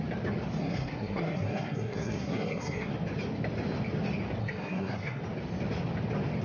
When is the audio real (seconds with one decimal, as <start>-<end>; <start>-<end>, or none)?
0.0-0.6; 2.9-4.4; 5.2-6.4